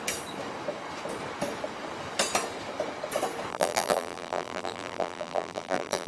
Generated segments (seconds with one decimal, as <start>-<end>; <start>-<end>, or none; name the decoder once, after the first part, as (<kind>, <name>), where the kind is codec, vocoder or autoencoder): 3.5-6.1 (vocoder, BigVGAN v2)